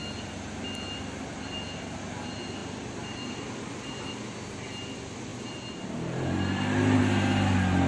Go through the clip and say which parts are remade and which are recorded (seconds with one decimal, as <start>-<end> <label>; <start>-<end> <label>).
0.0-7.9 recorded